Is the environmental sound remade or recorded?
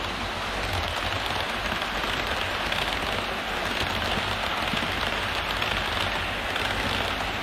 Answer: recorded